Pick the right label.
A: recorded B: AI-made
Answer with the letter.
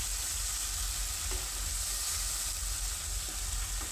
A